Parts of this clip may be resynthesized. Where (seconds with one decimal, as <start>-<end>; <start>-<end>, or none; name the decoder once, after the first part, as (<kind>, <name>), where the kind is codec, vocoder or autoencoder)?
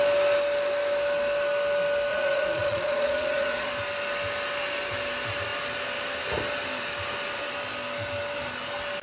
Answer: 2.1-3.7 (vocoder, Vocos)